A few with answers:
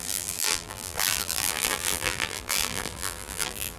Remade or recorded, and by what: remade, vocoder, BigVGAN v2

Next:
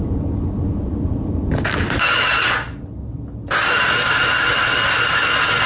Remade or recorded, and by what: recorded